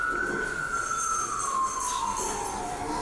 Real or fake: real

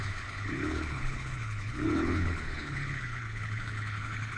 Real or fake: fake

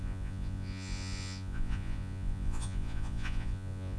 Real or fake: fake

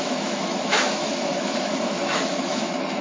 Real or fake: fake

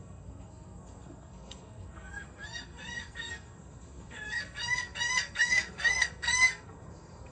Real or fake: fake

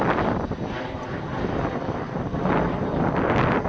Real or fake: real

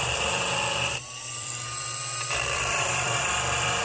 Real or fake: fake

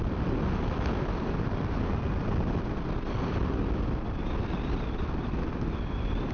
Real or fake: real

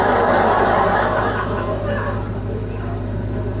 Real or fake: real